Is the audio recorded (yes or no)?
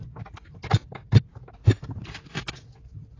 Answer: no